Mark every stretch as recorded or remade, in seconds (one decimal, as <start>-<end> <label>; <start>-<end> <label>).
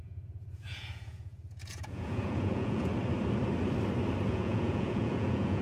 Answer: 0.0-2.9 remade; 2.9-4.3 recorded; 4.3-5.6 remade